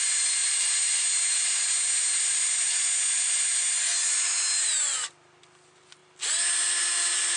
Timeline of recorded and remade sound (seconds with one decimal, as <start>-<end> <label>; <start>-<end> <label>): 0.0-7.4 recorded